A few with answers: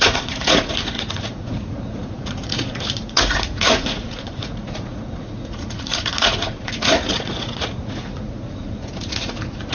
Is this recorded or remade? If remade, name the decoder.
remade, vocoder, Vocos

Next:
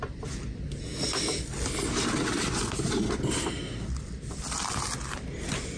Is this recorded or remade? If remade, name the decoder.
recorded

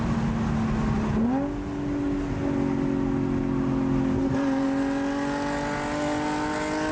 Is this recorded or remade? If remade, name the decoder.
recorded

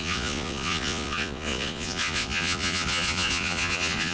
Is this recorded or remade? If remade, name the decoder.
remade, vocoder, Vocos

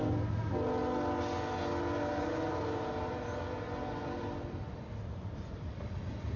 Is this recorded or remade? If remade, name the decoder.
recorded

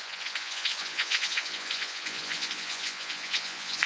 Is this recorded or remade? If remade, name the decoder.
remade, vocoder, Vocos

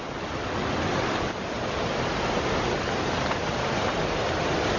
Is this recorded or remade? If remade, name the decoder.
recorded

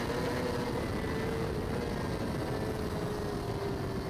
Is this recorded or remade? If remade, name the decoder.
recorded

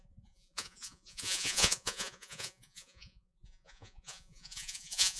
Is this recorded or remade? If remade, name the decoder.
remade, vocoder, Vocos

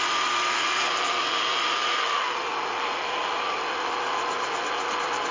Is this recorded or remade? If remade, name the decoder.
recorded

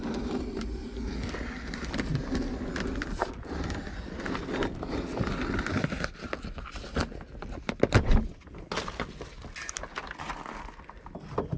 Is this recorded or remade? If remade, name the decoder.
recorded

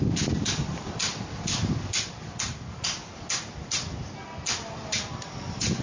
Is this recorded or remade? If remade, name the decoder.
recorded